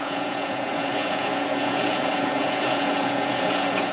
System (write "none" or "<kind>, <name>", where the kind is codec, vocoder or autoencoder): vocoder, Vocos